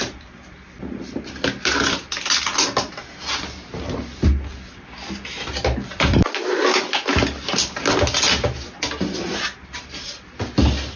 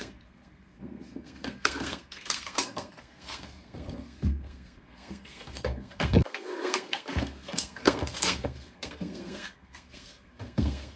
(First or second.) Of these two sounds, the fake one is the second